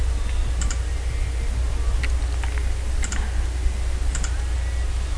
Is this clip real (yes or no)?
yes